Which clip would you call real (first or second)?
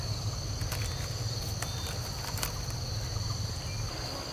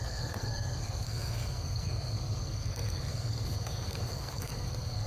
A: first